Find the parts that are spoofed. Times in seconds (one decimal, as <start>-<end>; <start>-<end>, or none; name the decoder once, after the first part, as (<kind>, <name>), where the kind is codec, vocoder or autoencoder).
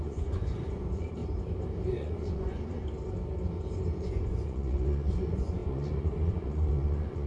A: 0.0-1.2 (vocoder, Vocos); 1.9-2.8; 4.0-7.3